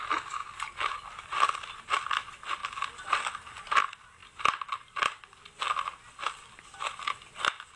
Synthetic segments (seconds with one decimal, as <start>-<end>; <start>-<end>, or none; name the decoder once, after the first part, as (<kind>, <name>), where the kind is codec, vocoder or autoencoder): none